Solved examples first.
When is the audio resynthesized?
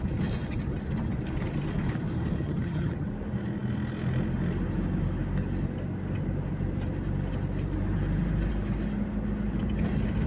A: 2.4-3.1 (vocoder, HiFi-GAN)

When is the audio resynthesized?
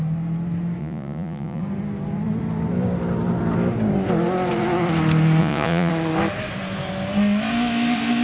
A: 0.8-1.6 (vocoder, Vocos); 5.4-5.9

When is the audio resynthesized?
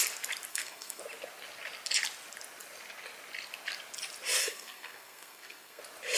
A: 0.5-1.0 (codec, SNAC); 4.4-5.8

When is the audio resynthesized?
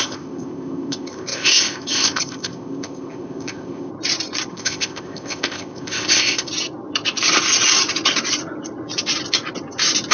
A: 0.0-3.9 (codec, ZipCodec); 4.5-6.5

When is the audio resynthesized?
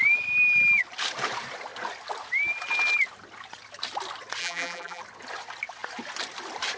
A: 4.4-5.0 (vocoder, BigVGAN v2)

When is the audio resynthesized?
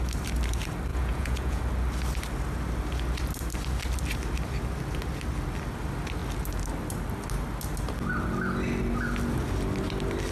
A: 0.9-1.6 (vocoder, Vocos)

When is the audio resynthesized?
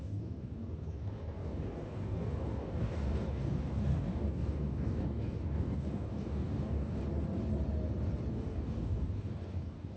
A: 0.0-7.0 (codec, DAC); 8.3-10.0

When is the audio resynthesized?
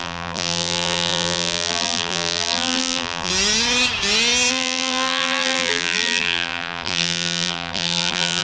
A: 0.0-3.3 (vocoder, BigVGAN v2); 4.5-8.4